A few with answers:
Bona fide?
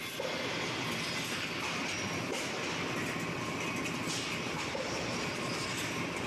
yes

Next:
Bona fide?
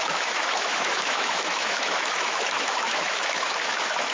no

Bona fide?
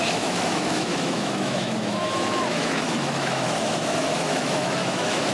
no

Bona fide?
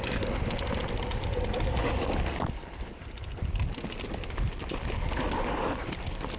yes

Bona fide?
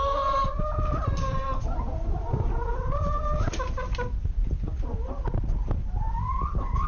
yes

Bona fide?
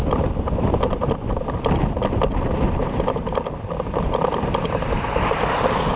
yes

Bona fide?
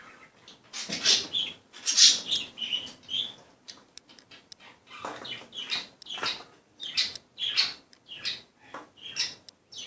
yes